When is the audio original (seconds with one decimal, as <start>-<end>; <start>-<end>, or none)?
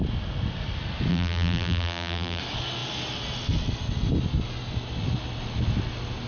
0.0-1.1; 2.4-6.3